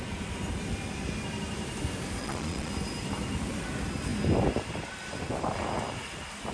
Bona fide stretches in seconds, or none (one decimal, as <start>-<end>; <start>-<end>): 0.0-2.2; 2.7-6.5